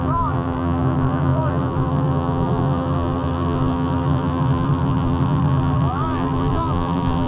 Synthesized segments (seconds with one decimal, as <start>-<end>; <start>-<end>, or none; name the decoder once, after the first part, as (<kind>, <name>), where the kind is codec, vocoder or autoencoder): 0.0-7.3 (vocoder, BigVGAN v2)